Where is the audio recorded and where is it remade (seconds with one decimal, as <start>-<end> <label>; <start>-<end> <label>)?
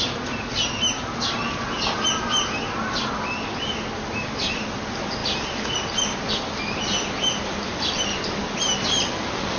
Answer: 0.0-9.6 recorded